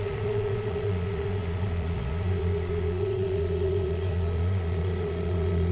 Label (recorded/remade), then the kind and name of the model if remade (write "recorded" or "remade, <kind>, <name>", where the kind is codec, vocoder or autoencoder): remade, vocoder, Vocos